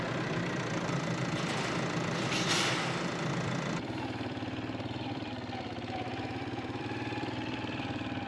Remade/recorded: remade